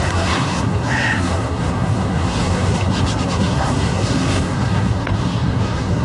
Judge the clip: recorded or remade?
remade